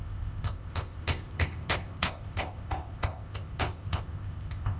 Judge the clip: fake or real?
fake